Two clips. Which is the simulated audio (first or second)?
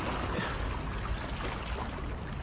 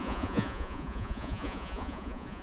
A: second